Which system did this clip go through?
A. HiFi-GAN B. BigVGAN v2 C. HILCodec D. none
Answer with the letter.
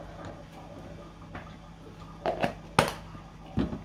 D